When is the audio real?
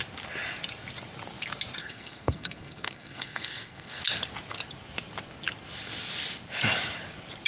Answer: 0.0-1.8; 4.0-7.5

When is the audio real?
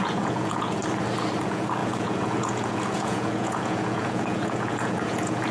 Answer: 0.8-1.4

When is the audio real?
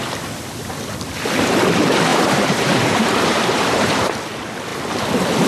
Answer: 0.0-2.1; 4.2-5.5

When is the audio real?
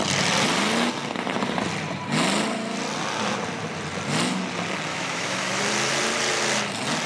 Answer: 0.0-4.9; 5.6-7.1